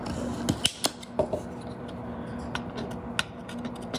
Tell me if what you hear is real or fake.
real